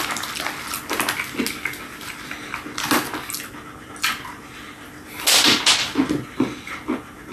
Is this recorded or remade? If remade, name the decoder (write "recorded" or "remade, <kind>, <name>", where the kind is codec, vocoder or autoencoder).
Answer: recorded